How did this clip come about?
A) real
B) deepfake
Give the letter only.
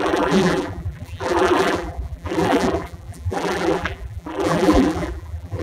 B